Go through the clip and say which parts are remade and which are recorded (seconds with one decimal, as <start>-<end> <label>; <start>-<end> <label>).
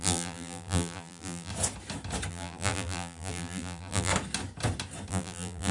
0.0-1.5 remade; 1.5-2.3 recorded; 2.3-4.1 remade; 4.1-5.1 recorded; 5.1-5.7 remade